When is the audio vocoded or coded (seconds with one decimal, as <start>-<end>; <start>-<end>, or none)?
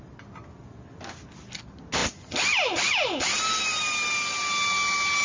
none